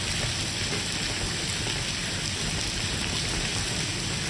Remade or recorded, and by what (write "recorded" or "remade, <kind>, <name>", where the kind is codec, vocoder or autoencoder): recorded